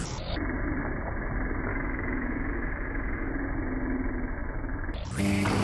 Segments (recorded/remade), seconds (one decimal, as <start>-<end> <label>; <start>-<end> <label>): 0.0-1.7 recorded; 1.7-3.3 remade; 3.3-5.6 recorded